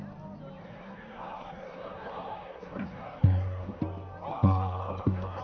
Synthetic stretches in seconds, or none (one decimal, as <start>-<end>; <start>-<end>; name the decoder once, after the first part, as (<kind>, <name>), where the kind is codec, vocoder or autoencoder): 0.6-3.8 (codec, SNAC); 4.3-5.4